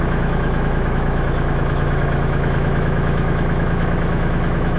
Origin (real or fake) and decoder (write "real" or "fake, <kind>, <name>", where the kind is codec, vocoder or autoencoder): fake, autoencoder, DAC-VAE